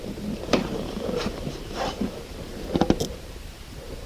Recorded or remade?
remade